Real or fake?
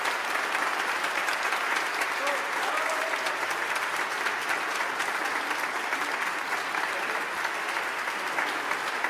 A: real